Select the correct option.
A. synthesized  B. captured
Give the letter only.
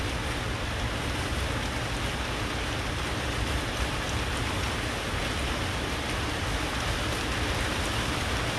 B